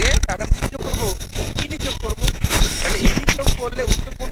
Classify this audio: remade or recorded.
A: remade